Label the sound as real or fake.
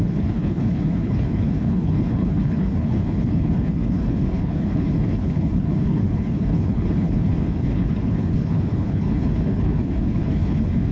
fake